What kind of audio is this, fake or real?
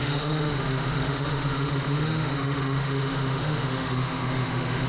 fake